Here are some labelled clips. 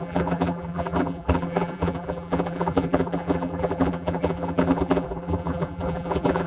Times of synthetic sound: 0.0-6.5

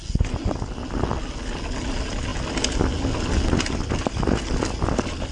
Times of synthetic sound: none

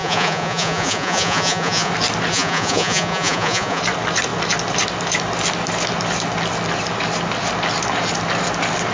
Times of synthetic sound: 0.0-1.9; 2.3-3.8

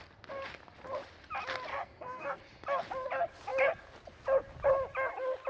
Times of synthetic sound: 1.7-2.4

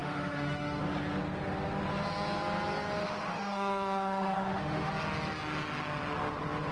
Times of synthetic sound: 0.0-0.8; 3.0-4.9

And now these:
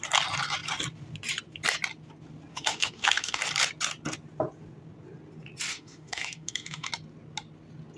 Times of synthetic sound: 2.5-3.4; 5.7-6.9

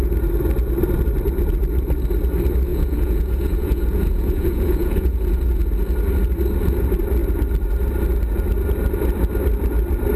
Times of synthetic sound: 2.7-5.5